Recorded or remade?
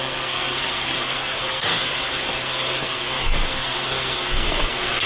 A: remade